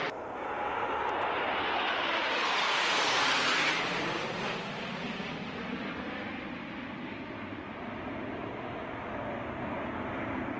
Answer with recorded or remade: recorded